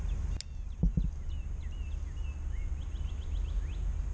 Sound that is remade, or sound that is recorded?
recorded